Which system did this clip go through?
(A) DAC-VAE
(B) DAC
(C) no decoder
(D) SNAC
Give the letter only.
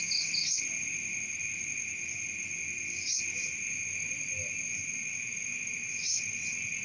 C